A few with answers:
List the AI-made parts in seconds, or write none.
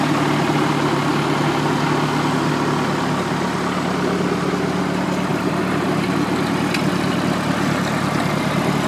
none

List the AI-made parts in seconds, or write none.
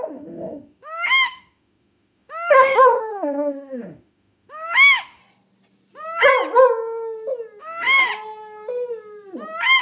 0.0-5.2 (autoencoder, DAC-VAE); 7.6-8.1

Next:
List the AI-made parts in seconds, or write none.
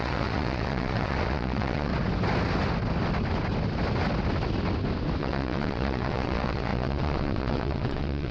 0.0-1.9 (vocoder, WaveNeXt); 5.2-8.3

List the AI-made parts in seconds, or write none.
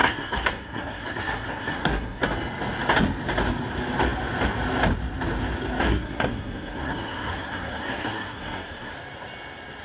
0.0-2.2 (codec, SNAC); 5.9-8.9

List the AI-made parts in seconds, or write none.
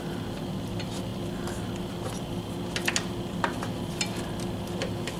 none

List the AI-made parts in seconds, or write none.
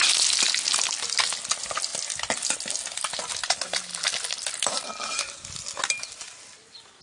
none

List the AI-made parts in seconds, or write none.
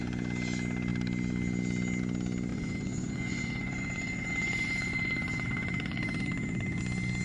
2.5-6.8 (vocoder, Vocos)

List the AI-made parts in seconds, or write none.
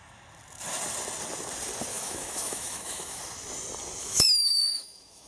1.9-3.2 (autoencoder, DAC-VAE); 4.0-5.3